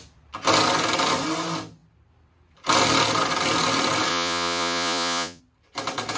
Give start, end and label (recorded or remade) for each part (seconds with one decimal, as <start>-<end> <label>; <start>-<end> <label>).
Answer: 0.0-4.1 recorded; 4.1-5.4 remade; 5.4-6.2 recorded